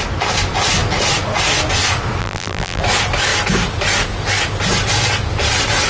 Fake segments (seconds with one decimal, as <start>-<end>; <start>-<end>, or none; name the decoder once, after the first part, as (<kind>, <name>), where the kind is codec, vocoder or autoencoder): 2.2-2.8 (vocoder, BigVGAN v2)